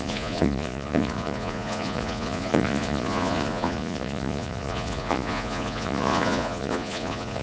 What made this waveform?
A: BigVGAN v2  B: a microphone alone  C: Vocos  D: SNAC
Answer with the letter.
C